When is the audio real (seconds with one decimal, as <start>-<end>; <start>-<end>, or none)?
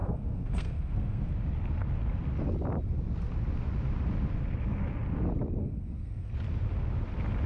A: 1.3-5.6; 6.3-7.5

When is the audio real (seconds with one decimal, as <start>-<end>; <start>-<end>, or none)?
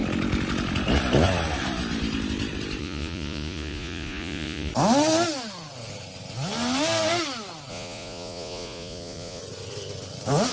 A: 0.0-2.8; 4.7-7.7; 9.4-10.5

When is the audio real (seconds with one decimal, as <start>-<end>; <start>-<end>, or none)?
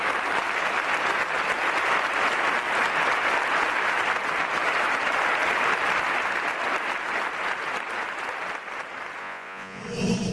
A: 0.0-9.2; 9.8-10.3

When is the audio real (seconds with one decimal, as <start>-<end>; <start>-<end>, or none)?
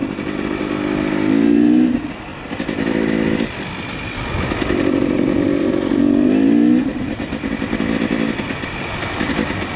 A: 0.0-2.3; 6.0-6.9; 9.3-9.8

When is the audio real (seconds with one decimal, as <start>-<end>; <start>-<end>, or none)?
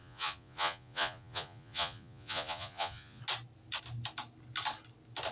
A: 3.2-5.3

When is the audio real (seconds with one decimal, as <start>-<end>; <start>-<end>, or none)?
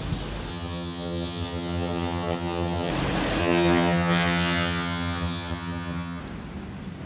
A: 0.0-0.5; 2.9-3.4; 6.2-7.1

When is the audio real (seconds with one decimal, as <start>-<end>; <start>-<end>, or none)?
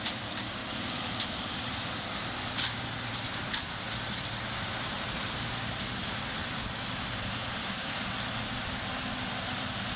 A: 0.6-3.1